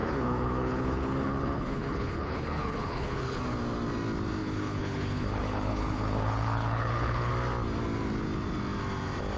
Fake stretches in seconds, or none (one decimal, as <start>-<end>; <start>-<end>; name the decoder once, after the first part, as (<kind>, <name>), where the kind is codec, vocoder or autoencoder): 0.0-3.4 (codec, HILCodec); 4.4-7.3